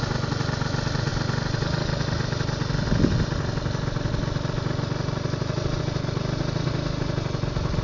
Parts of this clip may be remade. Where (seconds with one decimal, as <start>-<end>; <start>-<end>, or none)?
none